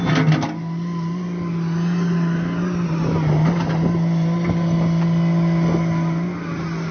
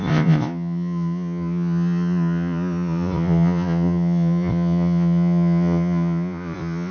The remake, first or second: second